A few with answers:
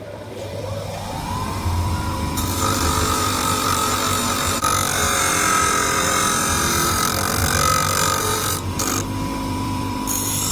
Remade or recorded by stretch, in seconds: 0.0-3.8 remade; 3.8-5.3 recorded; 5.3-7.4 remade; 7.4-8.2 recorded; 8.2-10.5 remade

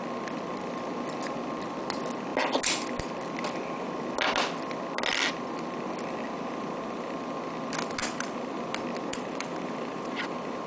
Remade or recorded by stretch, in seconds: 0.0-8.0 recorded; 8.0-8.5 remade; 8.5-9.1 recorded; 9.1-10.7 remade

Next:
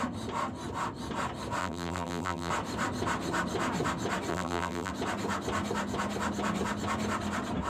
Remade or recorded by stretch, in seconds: 0.0-1.6 recorded; 1.6-2.5 remade; 2.5-4.3 recorded; 4.3-4.9 remade; 4.9-7.7 recorded

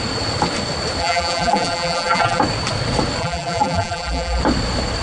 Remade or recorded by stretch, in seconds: 0.0-1.0 recorded; 1.0-2.4 remade; 2.4-3.2 recorded; 3.2-4.4 remade; 4.4-5.0 recorded